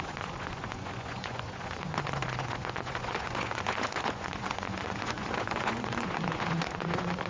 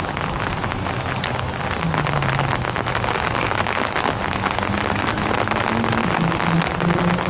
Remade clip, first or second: first